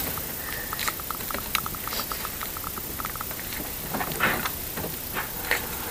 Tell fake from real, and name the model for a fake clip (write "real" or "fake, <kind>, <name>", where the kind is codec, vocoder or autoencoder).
real